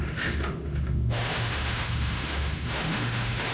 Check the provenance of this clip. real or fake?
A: fake